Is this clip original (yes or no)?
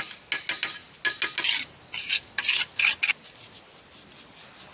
yes